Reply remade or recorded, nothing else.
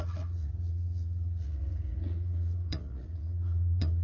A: remade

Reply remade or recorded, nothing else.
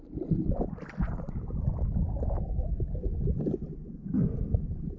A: recorded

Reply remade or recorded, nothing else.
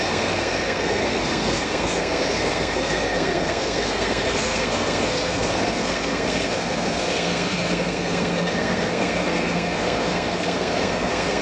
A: remade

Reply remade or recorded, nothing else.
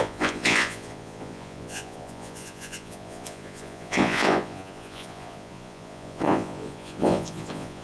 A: remade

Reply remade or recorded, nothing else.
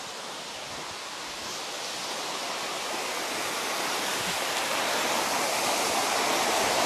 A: recorded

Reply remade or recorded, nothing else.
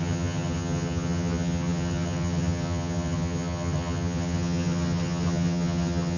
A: remade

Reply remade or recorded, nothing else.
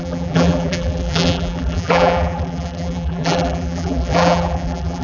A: remade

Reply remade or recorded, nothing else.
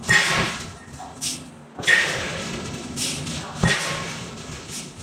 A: recorded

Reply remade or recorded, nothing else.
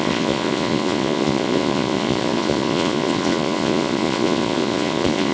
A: remade